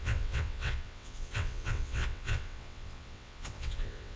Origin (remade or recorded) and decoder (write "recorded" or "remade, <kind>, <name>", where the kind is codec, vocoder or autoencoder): remade, vocoder, WaveNeXt